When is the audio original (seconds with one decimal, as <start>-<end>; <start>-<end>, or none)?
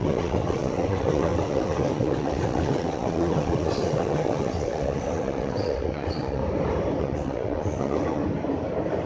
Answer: 6.4-7.0; 8.2-9.1